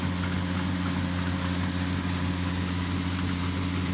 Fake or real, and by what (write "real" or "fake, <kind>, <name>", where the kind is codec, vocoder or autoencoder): real